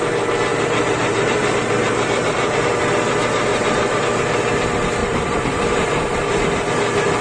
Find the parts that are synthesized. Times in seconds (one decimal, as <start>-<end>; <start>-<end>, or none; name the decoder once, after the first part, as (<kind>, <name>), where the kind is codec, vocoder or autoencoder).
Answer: 0.5-2.5 (vocoder, BigVGAN v2); 3.5-4.0; 5.0-5.9